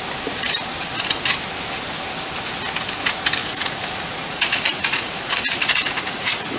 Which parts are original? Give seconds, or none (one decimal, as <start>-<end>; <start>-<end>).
0.0-3.4